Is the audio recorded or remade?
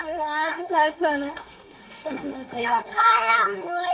remade